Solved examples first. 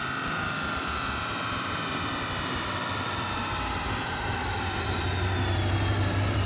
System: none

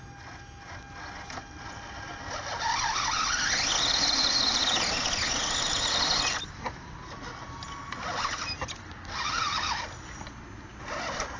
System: none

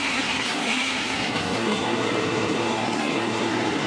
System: codec, SNAC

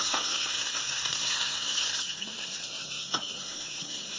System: codec, SNAC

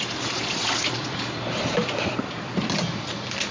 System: vocoder, BigVGAN v2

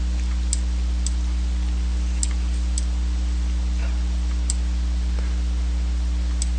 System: none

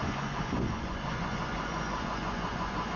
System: vocoder, Vocos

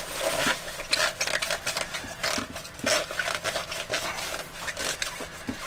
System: none